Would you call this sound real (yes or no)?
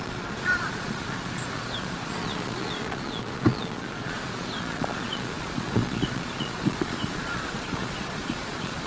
no